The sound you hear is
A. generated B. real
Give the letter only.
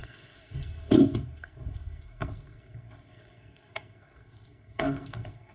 A